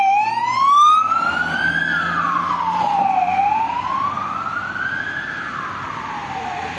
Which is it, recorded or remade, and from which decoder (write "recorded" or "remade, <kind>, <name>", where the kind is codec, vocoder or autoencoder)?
recorded